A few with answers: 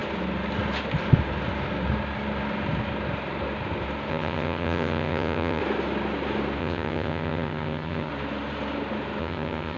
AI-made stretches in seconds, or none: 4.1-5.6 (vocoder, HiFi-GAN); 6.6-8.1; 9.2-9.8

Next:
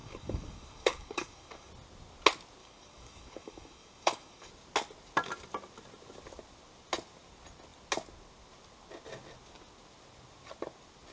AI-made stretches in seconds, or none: 0.0-1.7 (codec, DAC); 2.6-4.5

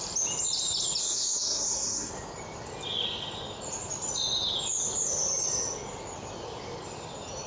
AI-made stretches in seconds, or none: 1.0-2.1 (codec, SNAC)

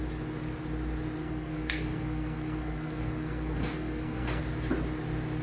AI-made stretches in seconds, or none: 1.2-4.4 (codec, SNAC)

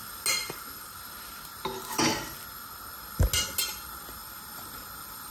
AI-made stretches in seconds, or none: 0.4-1.0 (vocoder, BigVGAN v2); 4.2-5.3